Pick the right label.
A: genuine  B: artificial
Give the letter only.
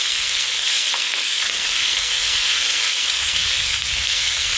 B